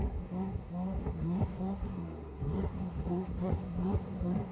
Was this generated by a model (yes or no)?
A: yes